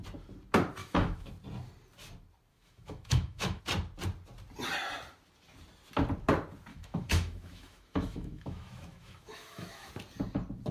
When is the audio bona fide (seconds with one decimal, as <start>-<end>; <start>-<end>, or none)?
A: 0.0-0.8; 1.3-2.5; 3.6-6.7; 9.9-10.7